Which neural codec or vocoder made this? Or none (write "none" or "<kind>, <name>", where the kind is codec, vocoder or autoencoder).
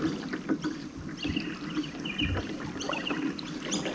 vocoder, BigVGAN v2